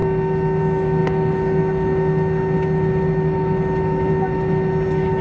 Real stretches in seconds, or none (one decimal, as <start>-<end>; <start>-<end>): 0.0-5.2